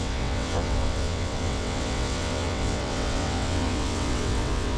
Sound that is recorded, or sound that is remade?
remade